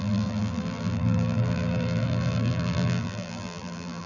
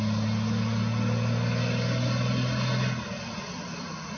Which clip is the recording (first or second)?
second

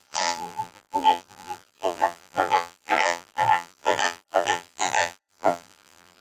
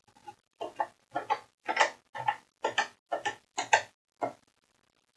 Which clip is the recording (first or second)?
second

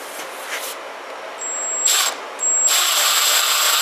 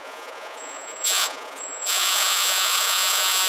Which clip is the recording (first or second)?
first